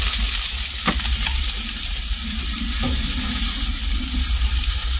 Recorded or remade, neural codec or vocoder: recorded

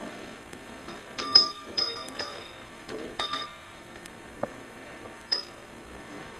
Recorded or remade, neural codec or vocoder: remade, codec, SNAC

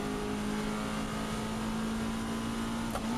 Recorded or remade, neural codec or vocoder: recorded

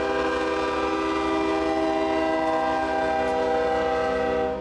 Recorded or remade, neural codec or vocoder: recorded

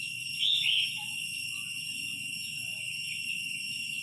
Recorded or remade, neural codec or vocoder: remade, vocoder, Vocos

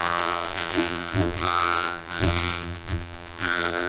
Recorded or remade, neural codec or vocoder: remade, vocoder, BigVGAN v2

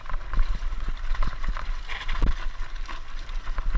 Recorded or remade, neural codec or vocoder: recorded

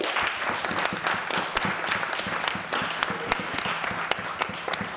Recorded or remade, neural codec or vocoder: recorded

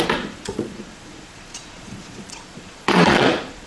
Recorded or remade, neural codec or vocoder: remade, vocoder, Vocos